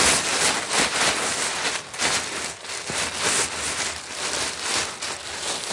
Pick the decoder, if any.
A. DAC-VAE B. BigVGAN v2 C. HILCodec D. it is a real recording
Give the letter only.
D